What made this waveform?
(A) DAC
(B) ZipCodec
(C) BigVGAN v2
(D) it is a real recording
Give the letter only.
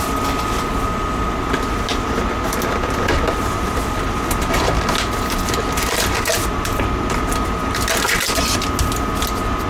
D